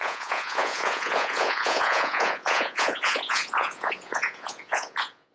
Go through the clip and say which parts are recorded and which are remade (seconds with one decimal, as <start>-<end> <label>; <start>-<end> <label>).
0.0-5.3 remade